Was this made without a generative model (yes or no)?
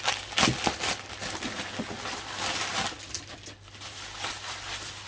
yes